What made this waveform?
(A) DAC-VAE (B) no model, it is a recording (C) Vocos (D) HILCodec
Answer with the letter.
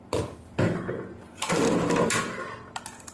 B